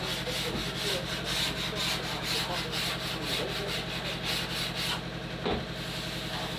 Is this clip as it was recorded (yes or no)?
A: yes